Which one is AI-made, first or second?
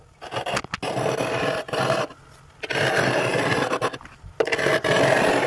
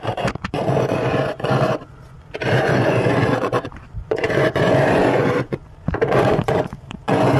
second